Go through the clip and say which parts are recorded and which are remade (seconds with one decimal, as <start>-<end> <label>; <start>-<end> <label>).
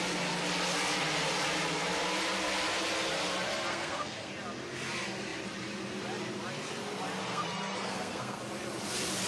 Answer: 0.0-3.7 recorded; 3.7-4.3 remade; 4.3-7.3 recorded; 7.3-8.4 remade; 8.4-9.3 recorded